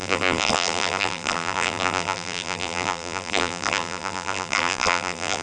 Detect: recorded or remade remade